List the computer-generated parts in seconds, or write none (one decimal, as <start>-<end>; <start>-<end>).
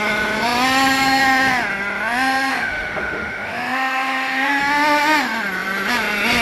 2.5-4.6